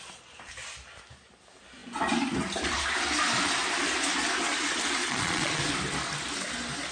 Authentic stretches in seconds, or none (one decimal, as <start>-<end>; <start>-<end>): 0.0-5.0; 5.6-6.9